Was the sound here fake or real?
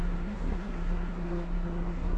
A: fake